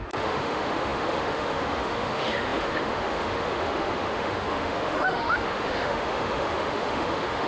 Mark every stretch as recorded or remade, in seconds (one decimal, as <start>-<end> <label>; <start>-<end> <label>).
0.0-7.5 remade